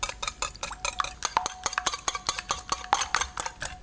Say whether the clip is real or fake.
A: real